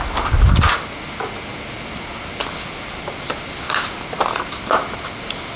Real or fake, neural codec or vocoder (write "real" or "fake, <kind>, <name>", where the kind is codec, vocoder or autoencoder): real